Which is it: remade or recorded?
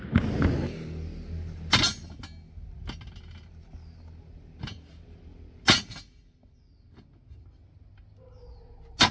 recorded